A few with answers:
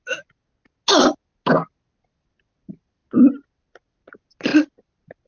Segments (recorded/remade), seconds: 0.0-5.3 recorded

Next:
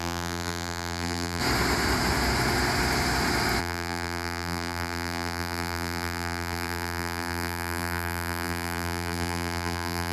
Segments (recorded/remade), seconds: 0.0-1.4 remade; 1.4-3.6 recorded; 3.6-10.1 remade